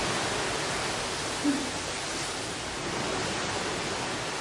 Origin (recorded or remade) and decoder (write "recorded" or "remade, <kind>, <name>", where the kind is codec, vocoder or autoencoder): remade, vocoder, BigVGAN v2